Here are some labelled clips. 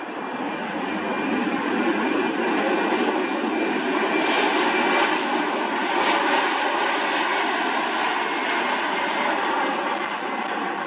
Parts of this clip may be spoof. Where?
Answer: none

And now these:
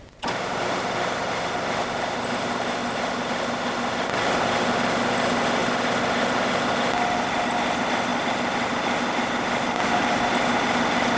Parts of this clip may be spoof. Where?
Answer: none

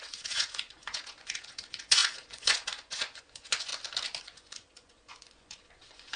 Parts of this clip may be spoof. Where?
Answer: 0.0-3.7 (vocoder, Vocos); 4.2-6.2

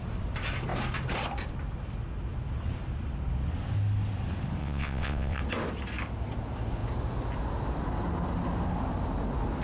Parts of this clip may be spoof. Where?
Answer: 4.6-5.4 (vocoder, WaveNeXt)

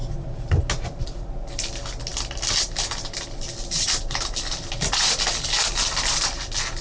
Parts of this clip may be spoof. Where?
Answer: none

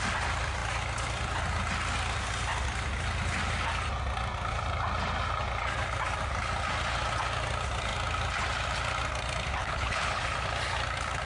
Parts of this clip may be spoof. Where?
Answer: 9.6-10.2 (codec, HILCodec)

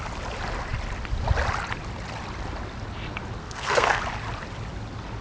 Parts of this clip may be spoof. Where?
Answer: 3.4-4.0 (codec, SNAC)